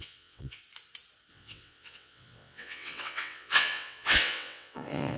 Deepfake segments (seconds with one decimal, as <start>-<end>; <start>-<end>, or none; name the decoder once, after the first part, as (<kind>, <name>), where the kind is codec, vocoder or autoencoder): 0.0-0.6 (vocoder, WaveNeXt); 1.3-5.2